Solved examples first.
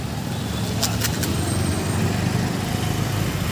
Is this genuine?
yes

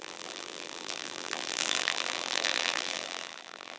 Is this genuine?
no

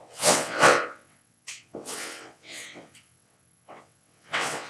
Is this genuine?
no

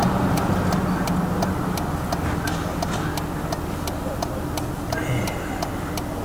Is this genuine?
yes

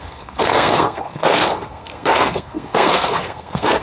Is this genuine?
no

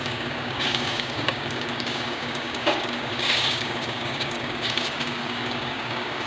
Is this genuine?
no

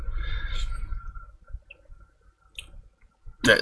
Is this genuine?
yes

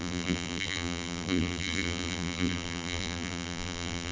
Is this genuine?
no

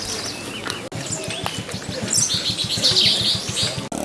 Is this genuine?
yes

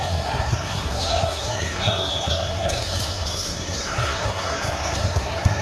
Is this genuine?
no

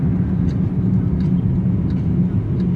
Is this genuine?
yes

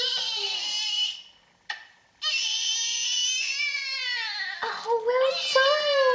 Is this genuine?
yes